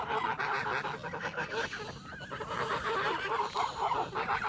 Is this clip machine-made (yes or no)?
no